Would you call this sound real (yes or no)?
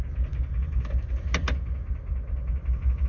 yes